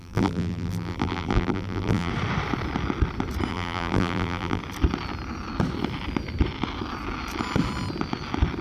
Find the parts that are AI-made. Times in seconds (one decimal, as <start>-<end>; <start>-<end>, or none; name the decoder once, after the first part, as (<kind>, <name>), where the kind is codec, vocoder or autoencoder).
0.0-2.1 (vocoder, BigVGAN v2); 3.5-4.6